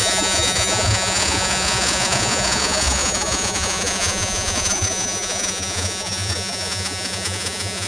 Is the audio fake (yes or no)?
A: yes